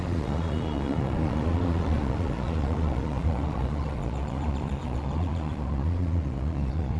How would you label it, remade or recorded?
remade